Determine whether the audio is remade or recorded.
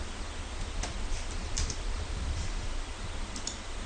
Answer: recorded